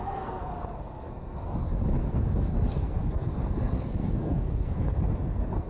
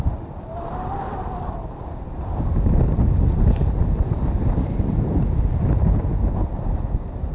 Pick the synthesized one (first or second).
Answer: first